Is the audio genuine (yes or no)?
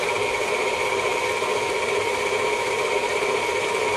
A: yes